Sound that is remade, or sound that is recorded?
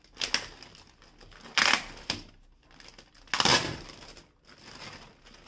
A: recorded